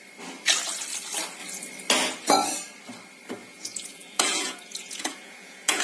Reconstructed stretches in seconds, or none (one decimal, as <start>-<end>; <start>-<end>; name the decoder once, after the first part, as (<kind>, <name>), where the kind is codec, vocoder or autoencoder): 3.4-5.8 (vocoder, Vocos)